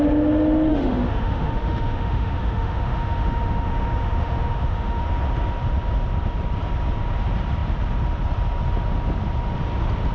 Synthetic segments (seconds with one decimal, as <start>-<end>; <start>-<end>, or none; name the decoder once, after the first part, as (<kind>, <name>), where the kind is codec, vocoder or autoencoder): 0.7-5.0 (autoencoder, DAC-VAE)